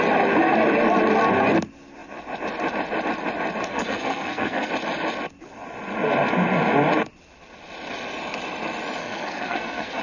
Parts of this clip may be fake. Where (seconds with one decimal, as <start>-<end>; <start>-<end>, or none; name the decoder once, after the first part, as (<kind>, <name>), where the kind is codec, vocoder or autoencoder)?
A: 3.7-4.7 (codec, SNAC); 9.0-10.0

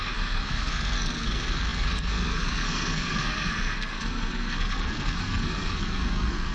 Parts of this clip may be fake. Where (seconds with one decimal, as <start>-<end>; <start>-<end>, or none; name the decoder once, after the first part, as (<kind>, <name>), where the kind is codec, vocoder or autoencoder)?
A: 0.0-6.5 (codec, SNAC)

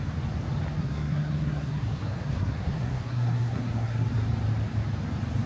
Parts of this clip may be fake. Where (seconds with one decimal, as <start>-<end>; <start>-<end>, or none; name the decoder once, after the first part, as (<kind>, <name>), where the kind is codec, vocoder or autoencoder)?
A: 0.8-4.1 (codec, SNAC)

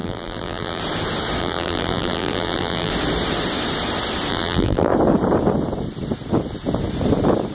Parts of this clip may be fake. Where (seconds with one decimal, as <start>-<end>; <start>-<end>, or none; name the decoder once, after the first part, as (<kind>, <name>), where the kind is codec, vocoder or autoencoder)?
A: 0.0-0.8 (vocoder, BigVGAN v2); 1.4-2.9; 4.3-4.9